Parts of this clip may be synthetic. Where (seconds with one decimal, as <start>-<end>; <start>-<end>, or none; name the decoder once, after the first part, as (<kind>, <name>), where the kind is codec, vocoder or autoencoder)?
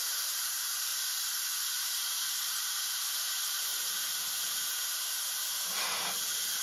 0.0-0.9 (vocoder, BigVGAN v2); 1.8-6.6